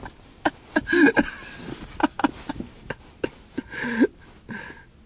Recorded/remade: recorded